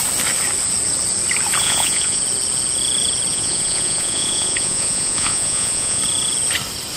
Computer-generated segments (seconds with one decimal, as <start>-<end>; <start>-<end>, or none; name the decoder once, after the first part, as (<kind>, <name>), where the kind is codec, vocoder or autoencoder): 1.6-2.2 (vocoder, Vocos); 3.3-6.0